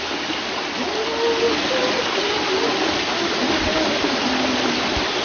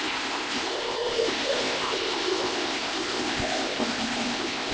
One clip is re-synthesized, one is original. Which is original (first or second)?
first